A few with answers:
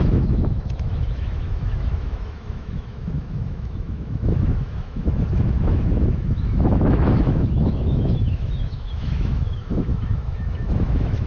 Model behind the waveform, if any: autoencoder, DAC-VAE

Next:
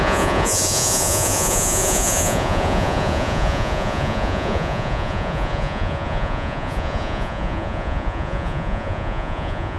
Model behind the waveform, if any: vocoder, Vocos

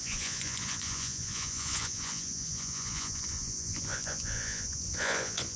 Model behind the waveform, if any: vocoder, Vocos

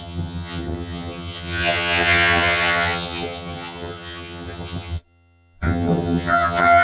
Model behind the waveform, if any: vocoder, HiFi-GAN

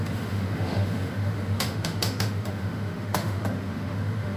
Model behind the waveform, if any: autoencoder, DAC-VAE